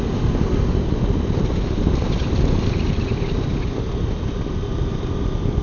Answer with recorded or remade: recorded